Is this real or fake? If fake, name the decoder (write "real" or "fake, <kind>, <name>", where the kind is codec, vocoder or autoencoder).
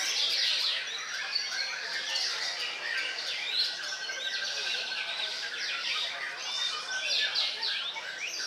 real